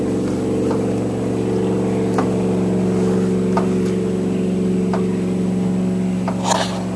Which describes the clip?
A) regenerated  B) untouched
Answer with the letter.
B